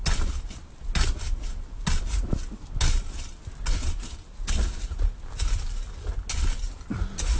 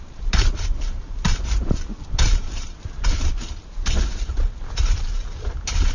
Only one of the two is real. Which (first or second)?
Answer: first